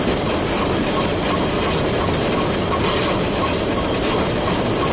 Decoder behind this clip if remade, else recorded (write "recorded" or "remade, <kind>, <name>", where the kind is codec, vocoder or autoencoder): recorded